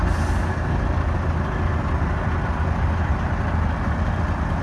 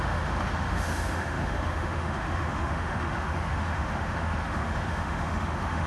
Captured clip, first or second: first